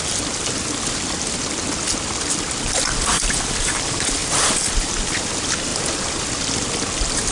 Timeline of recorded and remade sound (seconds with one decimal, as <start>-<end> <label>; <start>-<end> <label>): 0.0-4.2 recorded; 4.2-4.9 remade; 4.9-7.3 recorded